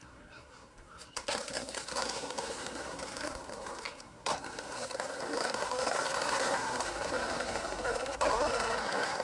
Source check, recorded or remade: remade